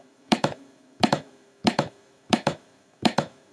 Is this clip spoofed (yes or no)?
yes